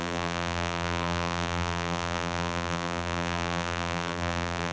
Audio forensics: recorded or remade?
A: remade